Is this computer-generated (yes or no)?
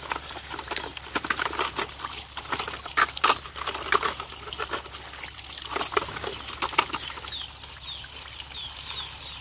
no